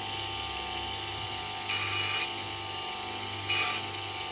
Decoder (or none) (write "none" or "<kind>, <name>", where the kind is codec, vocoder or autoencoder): none